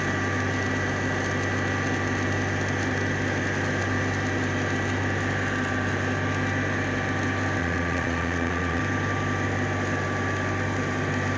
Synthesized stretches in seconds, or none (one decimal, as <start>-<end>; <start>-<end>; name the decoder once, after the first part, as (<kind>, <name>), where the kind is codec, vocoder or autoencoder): 7.6-8.8 (vocoder, Vocos)